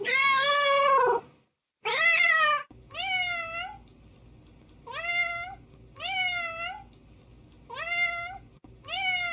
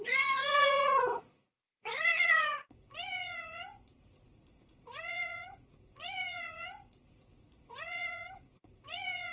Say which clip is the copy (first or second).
second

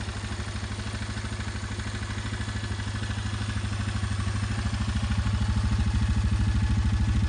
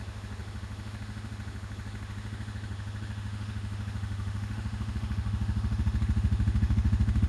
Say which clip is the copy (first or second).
second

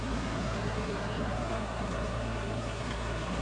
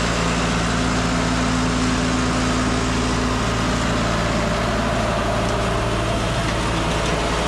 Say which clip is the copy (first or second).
first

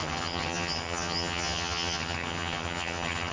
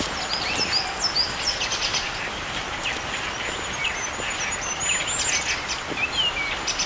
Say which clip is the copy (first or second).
first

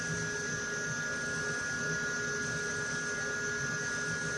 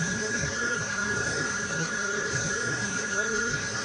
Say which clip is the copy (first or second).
second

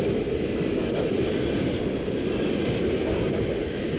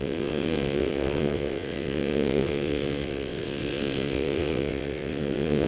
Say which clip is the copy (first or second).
second